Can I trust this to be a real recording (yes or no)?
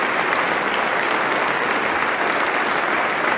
yes